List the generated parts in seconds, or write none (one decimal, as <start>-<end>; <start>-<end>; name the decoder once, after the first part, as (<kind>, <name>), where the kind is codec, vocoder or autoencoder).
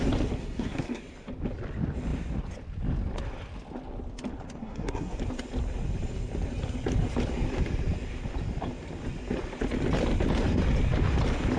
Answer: 0.4-1.0 (codec, SNAC); 4.6-5.2